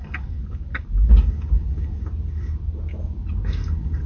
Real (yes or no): yes